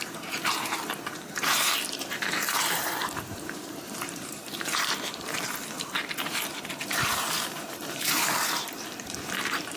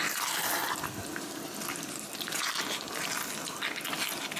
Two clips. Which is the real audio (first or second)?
second